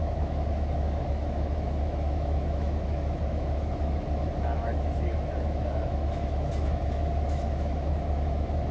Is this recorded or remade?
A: remade